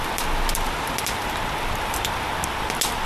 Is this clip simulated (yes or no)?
no